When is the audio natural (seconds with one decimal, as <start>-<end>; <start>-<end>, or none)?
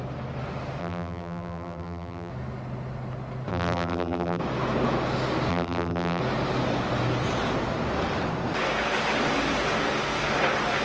0.0-0.8; 2.3-3.5; 4.4-5.5; 6.2-10.8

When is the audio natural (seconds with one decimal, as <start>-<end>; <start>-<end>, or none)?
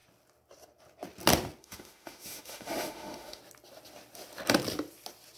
0.0-1.6; 3.4-5.4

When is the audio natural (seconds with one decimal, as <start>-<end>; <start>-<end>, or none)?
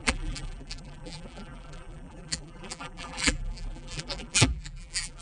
none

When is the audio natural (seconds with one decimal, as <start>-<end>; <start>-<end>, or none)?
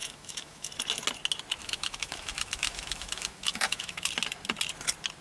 0.7-1.6; 4.1-5.2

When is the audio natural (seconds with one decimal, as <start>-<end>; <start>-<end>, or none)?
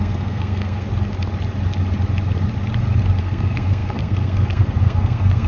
0.9-3.2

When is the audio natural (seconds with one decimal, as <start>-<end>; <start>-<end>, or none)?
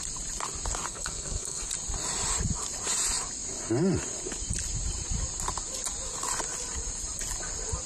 0.0-0.9; 1.6-7.9